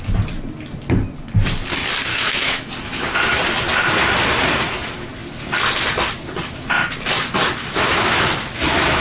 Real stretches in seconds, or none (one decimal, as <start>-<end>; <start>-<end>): 0.0-2.1; 2.7-7.6; 8.3-9.0

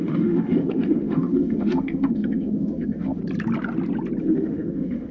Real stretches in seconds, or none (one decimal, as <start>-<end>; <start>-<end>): 3.2-4.2

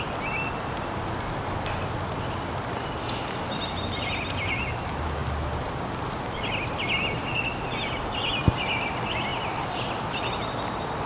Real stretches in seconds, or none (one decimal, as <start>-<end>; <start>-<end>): 0.0-11.1

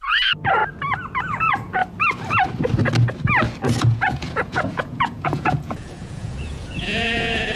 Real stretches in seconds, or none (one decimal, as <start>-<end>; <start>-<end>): 0.6-1.2; 1.8-3.8